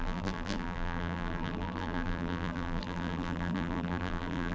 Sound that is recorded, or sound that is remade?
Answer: remade